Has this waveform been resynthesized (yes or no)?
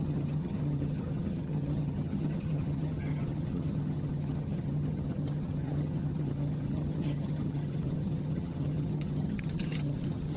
yes